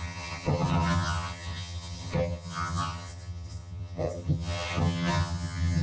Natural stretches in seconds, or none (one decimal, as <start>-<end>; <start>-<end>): none